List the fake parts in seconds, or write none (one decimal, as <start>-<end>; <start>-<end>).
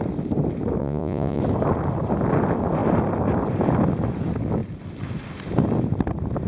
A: 0.8-1.4